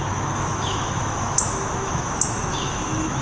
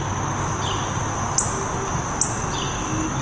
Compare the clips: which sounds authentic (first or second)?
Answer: second